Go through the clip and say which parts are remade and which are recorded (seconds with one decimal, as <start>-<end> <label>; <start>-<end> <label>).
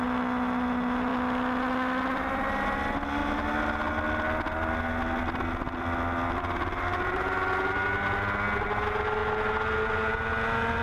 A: 0.0-10.8 recorded